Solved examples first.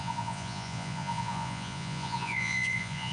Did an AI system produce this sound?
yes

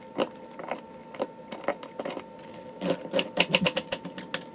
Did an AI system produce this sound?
no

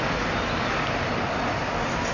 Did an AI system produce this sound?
no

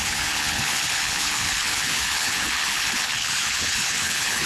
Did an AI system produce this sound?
yes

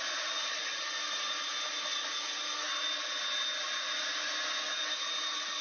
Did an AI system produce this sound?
no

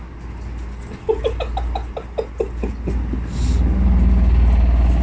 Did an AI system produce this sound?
no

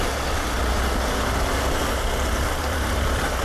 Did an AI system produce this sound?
yes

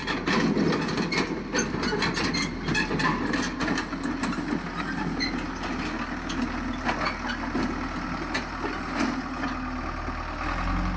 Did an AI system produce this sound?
no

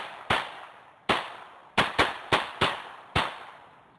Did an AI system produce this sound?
no